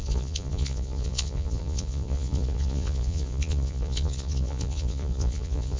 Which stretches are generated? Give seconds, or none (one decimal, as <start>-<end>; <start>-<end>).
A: 0.0-5.8